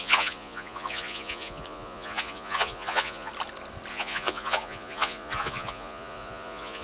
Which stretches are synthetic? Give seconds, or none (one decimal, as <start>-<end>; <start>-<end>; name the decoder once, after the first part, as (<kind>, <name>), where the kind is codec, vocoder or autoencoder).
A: 0.0-3.3 (vocoder, Vocos); 3.9-6.8